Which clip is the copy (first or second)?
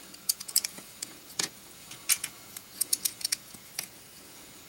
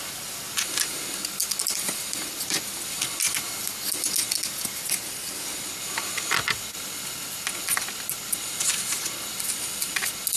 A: first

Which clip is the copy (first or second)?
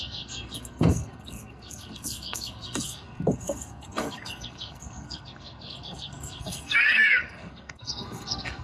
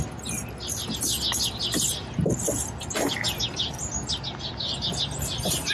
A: first